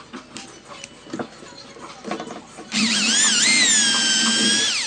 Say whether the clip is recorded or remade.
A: recorded